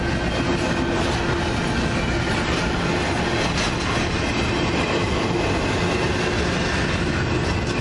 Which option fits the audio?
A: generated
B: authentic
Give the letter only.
B